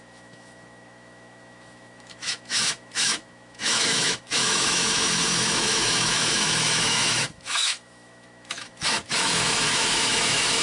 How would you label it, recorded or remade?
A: remade